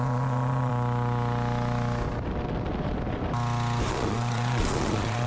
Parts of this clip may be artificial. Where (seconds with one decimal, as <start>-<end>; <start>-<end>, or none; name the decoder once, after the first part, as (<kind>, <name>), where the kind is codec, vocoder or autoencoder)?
0.0-0.7 (vocoder, Vocos); 3.9-5.3